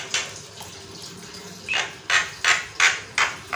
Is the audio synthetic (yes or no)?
no